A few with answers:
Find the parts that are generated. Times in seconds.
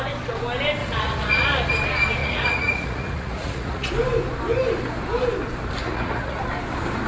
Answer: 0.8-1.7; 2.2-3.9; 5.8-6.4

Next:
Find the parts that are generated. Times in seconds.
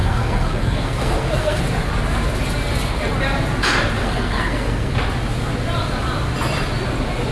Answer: 0.0-1.6; 4.0-4.9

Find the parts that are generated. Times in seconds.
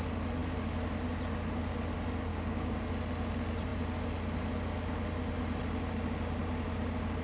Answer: 2.3-2.9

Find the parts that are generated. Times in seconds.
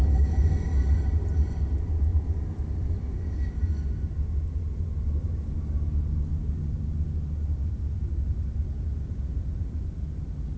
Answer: none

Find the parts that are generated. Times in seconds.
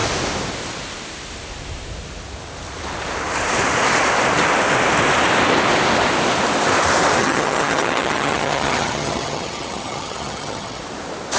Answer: 7.2-10.8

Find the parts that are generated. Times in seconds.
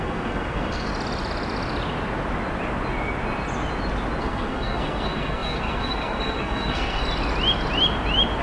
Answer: 0.0-0.9; 4.2-7.0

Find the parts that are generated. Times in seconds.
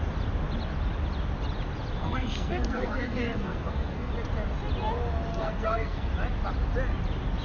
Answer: 2.0-4.1; 5.3-6.1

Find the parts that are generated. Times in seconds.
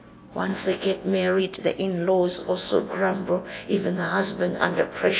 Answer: 0.5-1.4; 2.4-5.2